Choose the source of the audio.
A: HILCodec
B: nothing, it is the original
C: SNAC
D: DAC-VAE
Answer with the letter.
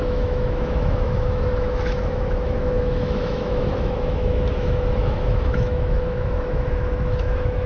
D